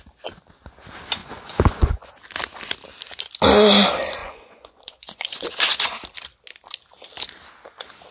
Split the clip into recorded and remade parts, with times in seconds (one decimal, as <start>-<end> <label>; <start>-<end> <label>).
0.0-1.2 recorded; 1.2-2.1 remade; 2.1-4.2 recorded; 4.2-6.0 remade; 6.0-8.1 recorded

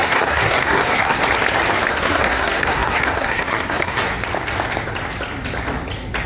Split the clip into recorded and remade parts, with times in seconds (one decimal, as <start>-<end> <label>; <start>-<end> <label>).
0.0-1.2 remade; 1.2-1.9 recorded; 1.9-4.1 remade; 4.1-6.3 recorded

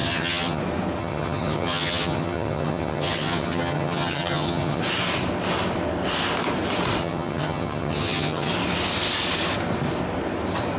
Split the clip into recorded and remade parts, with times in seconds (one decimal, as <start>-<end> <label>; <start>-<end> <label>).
0.0-0.6 remade; 0.6-1.0 recorded; 1.0-4.8 remade; 4.8-7.0 recorded; 7.0-8.5 remade; 8.5-10.8 recorded

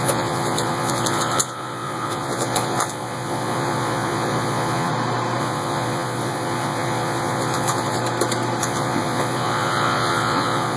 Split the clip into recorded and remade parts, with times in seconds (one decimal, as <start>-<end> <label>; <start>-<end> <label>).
0.0-4.9 remade; 4.9-5.4 recorded; 5.4-8.0 remade; 8.0-8.6 recorded; 8.6-10.8 remade

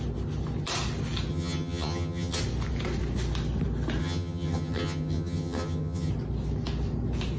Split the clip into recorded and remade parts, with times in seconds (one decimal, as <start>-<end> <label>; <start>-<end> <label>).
0.0-1.3 recorded; 1.3-2.4 remade; 2.4-4.0 recorded; 4.0-6.1 remade; 6.1-7.4 recorded

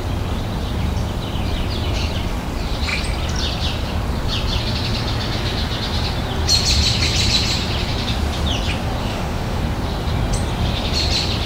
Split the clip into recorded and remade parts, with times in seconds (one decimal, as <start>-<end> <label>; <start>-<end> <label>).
0.0-9.0 recorded; 9.0-9.6 remade; 9.6-11.5 recorded